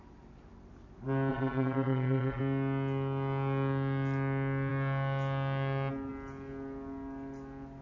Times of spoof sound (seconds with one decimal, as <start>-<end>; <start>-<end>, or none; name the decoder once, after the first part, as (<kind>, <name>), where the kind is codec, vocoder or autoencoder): 1.3-2.4 (vocoder, Vocos)